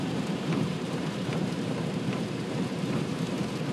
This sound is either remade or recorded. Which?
remade